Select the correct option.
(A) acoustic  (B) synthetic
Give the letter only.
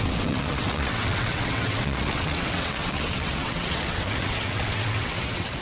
B